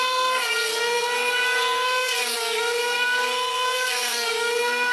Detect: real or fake fake